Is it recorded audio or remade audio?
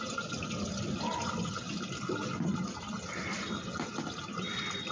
recorded